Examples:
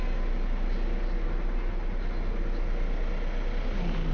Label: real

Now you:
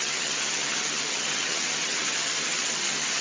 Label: fake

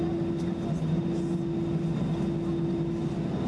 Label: real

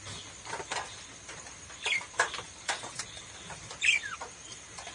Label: real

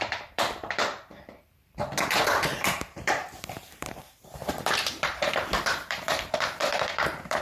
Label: fake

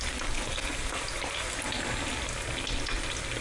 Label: real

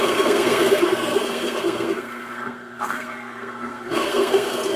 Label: fake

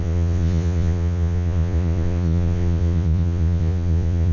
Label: fake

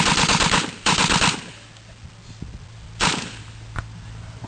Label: real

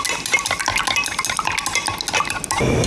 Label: real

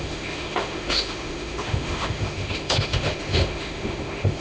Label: fake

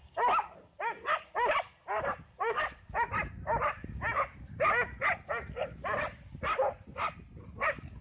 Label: real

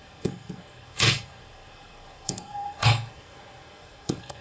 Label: fake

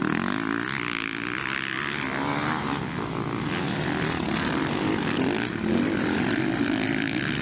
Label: real